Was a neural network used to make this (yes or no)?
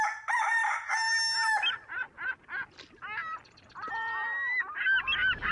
no